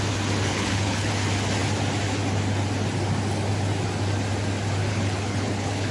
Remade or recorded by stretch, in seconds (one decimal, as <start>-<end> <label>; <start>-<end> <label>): 0.0-0.5 recorded; 0.5-1.1 remade; 1.1-4.9 recorded; 4.9-5.9 remade